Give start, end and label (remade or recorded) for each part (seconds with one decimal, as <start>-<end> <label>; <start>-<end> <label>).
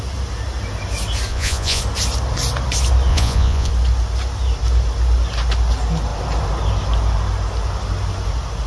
0.0-1.3 recorded; 1.3-1.8 remade; 1.8-3.1 recorded; 3.1-3.7 remade; 3.7-8.7 recorded